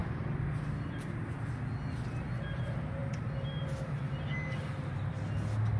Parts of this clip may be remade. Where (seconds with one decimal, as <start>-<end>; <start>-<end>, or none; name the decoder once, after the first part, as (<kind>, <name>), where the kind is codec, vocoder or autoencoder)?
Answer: none